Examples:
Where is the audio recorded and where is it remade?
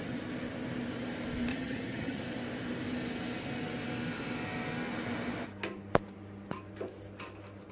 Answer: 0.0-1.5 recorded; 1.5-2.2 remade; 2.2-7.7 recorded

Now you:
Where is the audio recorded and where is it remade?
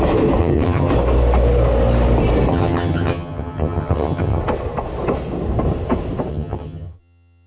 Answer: 0.0-0.4 recorded; 0.4-0.9 remade; 0.9-2.5 recorded; 2.5-4.4 remade; 4.4-6.3 recorded; 6.3-7.5 remade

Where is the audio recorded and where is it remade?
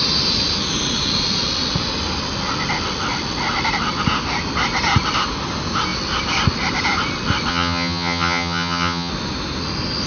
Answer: 0.0-7.5 recorded; 7.5-9.1 remade; 9.1-10.1 recorded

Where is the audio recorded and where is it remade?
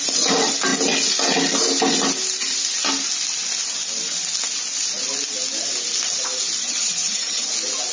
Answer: 0.0-6.6 recorded; 6.6-7.5 remade; 7.5-7.9 recorded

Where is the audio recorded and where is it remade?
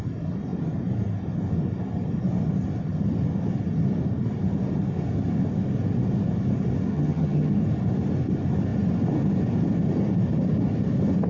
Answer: 0.0-6.9 recorded; 6.9-7.5 remade; 7.5-11.3 recorded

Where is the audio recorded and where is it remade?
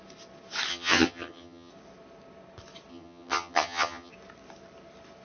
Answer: 0.0-0.7 recorded; 0.7-1.7 remade; 1.7-2.9 recorded; 2.9-4.1 remade; 4.1-5.2 recorded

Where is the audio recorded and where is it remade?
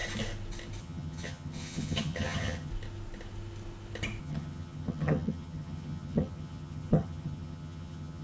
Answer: 0.0-0.8 recorded; 0.8-2.7 remade; 2.7-4.2 recorded; 4.2-8.2 remade